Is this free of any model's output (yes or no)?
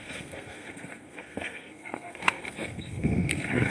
no